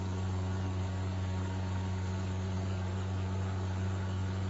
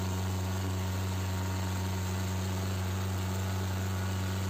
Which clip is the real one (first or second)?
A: second